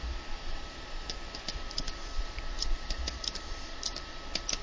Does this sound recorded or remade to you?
remade